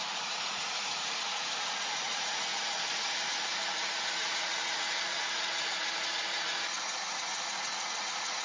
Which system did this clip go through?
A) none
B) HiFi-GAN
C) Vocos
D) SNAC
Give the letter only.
C